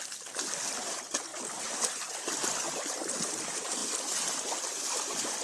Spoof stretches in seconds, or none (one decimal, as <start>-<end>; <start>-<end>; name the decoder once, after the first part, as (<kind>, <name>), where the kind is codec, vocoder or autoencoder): none